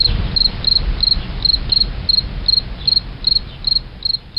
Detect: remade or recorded recorded